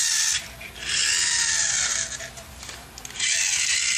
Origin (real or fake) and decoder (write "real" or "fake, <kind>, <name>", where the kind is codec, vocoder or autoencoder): real